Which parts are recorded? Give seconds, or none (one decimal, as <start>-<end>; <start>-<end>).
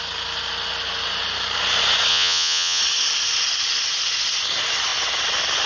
0.0-2.1; 2.8-5.7